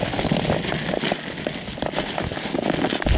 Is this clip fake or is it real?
real